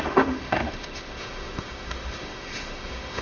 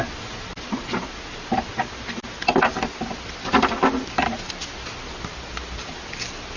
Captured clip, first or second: second